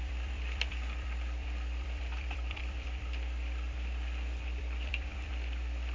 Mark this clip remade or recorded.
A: remade